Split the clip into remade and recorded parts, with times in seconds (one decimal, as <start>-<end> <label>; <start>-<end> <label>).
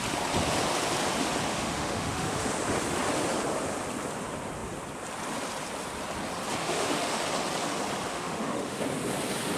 0.0-1.5 recorded; 1.5-2.5 remade; 2.5-6.6 recorded; 6.6-7.2 remade; 7.2-8.1 recorded; 8.1-8.8 remade; 8.8-9.6 recorded